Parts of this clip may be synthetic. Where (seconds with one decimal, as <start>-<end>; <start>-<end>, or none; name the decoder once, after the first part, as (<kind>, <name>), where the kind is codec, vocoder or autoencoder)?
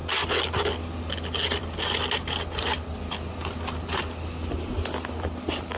none